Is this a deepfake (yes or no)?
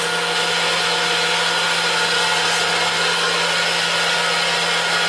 no